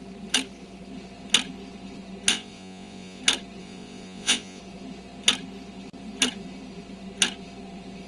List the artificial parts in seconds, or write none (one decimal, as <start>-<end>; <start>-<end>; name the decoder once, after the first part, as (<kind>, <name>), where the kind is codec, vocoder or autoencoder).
2.3-3.2 (vocoder, Vocos); 3.6-4.6